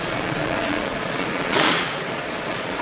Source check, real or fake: fake